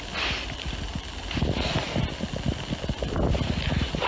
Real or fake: real